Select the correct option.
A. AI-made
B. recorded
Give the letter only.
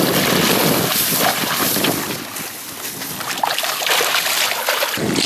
B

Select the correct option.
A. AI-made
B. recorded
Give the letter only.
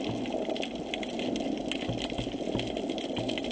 B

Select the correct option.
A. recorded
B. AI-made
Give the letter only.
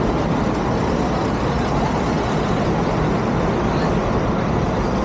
A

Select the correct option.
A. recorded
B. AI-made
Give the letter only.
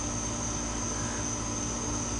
A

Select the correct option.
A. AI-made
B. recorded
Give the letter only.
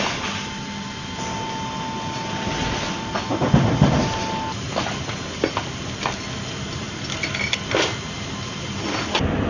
B